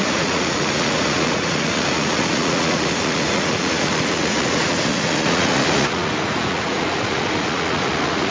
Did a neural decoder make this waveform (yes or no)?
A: yes